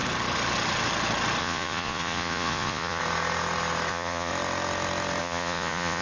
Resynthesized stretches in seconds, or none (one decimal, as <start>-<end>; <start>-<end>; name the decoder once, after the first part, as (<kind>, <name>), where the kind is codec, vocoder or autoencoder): 1.4-3.0 (vocoder, Vocos); 3.9-4.3; 5.2-6.0